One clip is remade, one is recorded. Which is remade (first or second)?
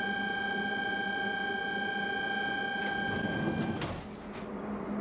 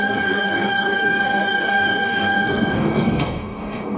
second